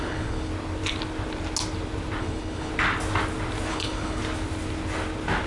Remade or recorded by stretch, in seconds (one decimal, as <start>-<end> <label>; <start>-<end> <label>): 0.0-0.5 remade; 0.5-2.2 recorded; 2.2-2.7 remade; 2.7-3.7 recorded; 3.7-4.2 remade; 4.2-5.5 recorded